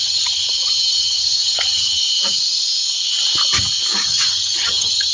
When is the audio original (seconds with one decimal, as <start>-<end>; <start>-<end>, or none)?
2.0-4.1

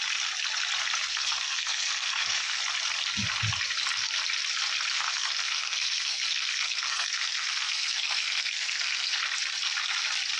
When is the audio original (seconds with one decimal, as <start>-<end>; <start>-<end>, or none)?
0.0-1.1; 2.6-4.9; 9.2-10.4